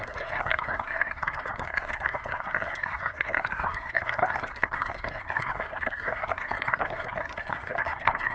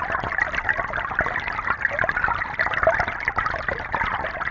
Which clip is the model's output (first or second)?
first